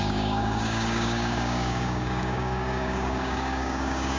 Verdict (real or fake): fake